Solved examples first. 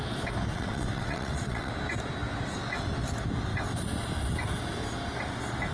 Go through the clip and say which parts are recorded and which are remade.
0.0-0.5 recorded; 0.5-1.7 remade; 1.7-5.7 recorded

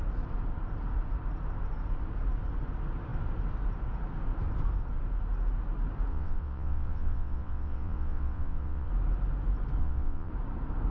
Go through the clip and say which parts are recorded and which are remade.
0.0-6.1 recorded; 6.1-8.9 remade; 8.9-9.8 recorded; 9.8-10.3 remade; 10.3-10.9 recorded

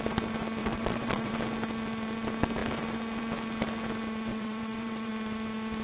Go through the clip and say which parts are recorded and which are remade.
0.0-0.6 recorded; 0.6-1.3 remade; 1.3-4.3 recorded; 4.3-5.1 remade; 5.1-5.8 recorded